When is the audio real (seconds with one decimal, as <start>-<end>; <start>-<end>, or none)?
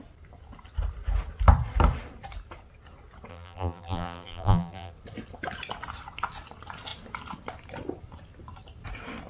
0.0-3.3; 4.9-9.3